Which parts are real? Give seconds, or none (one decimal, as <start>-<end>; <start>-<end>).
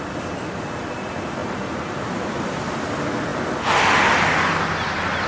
0.0-1.4; 2.6-5.3